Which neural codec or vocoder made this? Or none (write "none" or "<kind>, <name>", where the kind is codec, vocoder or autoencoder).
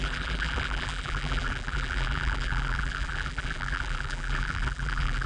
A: vocoder, BigVGAN v2